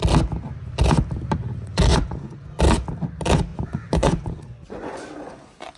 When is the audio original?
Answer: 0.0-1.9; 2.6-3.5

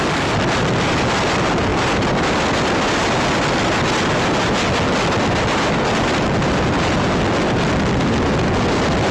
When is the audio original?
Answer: 0.0-9.1